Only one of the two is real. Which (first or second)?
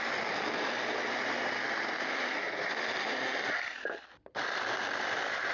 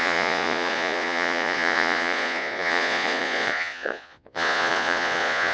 first